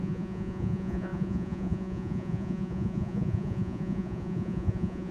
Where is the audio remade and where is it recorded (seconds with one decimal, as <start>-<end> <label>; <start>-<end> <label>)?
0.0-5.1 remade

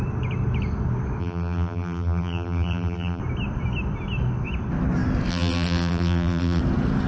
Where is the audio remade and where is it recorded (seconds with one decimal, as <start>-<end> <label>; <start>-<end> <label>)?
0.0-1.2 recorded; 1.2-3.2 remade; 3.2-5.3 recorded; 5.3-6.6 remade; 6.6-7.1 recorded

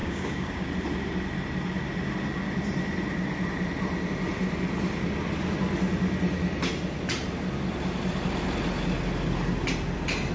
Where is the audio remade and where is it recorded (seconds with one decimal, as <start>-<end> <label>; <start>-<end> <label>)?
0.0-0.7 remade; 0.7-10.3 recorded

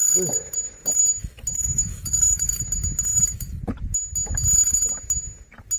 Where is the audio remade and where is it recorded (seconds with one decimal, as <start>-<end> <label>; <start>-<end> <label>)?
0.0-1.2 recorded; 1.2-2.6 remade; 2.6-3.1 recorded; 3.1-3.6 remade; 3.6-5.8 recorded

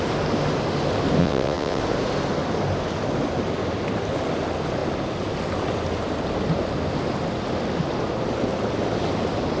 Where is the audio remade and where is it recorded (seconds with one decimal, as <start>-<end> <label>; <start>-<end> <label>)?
0.0-1.2 recorded; 1.2-1.8 remade; 1.8-9.6 recorded

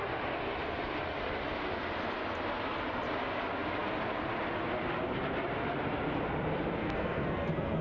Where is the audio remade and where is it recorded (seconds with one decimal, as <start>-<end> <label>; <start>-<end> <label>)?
0.0-6.8 recorded; 6.8-7.8 remade